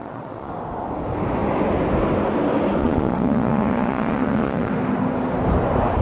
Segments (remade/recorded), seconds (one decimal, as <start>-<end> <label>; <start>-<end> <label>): 0.0-0.5 remade; 0.5-2.8 recorded; 2.8-4.7 remade; 4.7-6.0 recorded